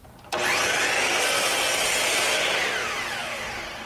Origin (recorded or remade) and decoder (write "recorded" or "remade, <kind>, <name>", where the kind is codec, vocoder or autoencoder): recorded